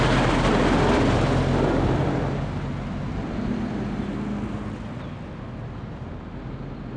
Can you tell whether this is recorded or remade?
recorded